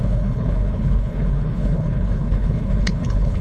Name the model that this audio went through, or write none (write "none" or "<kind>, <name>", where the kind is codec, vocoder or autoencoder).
codec, HILCodec